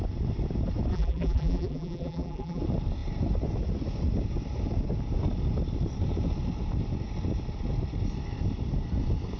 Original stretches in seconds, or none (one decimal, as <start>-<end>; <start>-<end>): 0.0-0.9; 2.6-9.4